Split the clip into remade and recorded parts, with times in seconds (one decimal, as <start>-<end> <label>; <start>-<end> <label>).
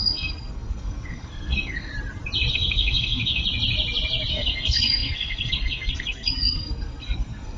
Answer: 0.0-1.9 remade; 1.9-2.5 recorded; 2.5-3.4 remade; 3.4-4.3 recorded; 4.3-7.6 remade